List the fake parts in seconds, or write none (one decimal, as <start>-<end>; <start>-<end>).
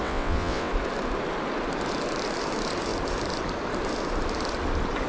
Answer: 0.0-0.7